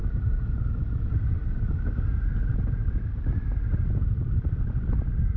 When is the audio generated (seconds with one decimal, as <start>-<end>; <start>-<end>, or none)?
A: none